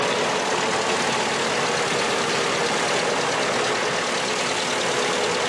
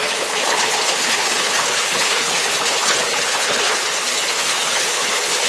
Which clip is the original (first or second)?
first